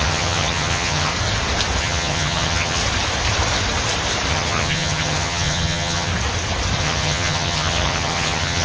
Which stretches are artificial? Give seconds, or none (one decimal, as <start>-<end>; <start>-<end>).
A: 0.0-1.1; 1.8-2.8; 4.3-6.1; 6.8-8.6